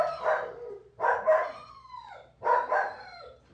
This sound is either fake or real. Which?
real